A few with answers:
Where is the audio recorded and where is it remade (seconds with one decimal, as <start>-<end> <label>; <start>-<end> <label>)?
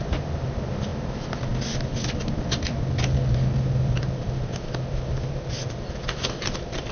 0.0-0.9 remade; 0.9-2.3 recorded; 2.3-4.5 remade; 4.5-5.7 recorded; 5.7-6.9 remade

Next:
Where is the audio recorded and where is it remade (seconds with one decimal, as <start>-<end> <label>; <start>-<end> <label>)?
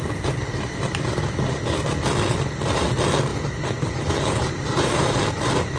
0.0-1.9 remade; 1.9-3.3 recorded; 3.3-5.2 remade; 5.2-5.8 recorded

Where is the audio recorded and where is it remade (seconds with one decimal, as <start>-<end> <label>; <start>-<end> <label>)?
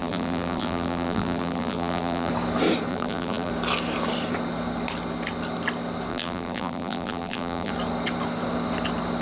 0.0-2.3 remade; 2.3-2.9 recorded; 2.9-3.5 remade; 3.5-6.1 recorded; 6.1-7.7 remade; 7.7-9.2 recorded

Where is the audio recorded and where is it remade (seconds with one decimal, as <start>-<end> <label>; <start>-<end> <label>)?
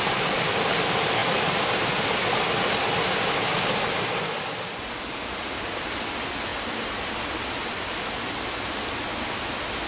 0.0-1.2 recorded; 1.2-2.0 remade; 2.0-9.9 recorded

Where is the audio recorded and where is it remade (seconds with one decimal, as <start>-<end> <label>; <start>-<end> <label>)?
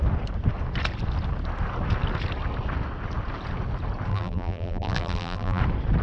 0.0-4.1 recorded; 4.1-5.6 remade; 5.6-6.0 recorded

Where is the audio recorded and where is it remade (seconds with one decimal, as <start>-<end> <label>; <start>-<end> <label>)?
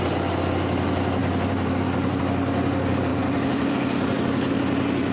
0.0-1.2 recorded; 1.2-2.2 remade; 2.2-5.1 recorded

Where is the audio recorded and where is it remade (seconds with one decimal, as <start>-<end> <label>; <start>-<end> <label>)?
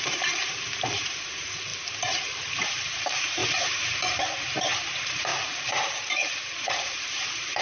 0.0-7.6 remade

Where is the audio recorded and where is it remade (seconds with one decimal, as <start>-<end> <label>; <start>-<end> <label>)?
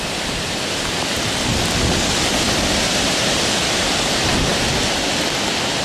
0.0-5.8 recorded